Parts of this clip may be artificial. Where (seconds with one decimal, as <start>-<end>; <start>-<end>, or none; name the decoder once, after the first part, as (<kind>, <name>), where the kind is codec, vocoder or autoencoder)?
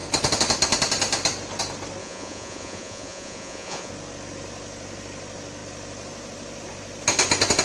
2.0-3.9 (vocoder, Vocos)